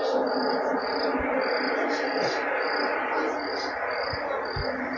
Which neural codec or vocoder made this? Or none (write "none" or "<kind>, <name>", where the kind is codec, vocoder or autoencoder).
none